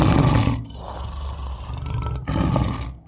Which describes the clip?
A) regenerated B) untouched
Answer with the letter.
B